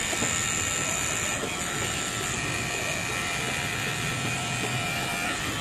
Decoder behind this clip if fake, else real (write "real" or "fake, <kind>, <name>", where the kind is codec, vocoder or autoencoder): real